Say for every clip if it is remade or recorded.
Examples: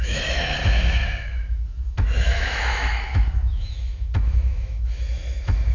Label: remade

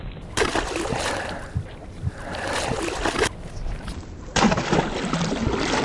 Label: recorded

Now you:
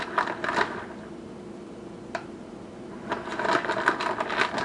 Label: recorded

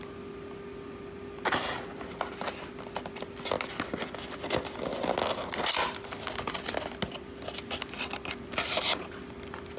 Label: recorded